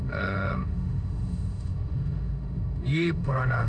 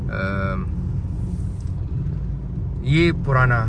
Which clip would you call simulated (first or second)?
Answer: first